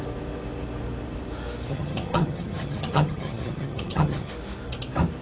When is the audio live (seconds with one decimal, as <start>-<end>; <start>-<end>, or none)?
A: 0.0-1.7; 4.3-5.2